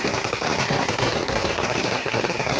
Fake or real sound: fake